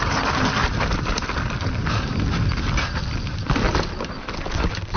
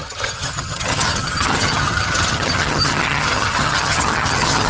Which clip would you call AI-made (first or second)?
second